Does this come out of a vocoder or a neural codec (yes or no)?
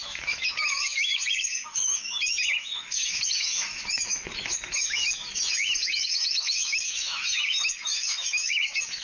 yes